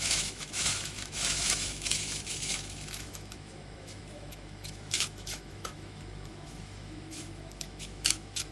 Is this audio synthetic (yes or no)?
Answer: yes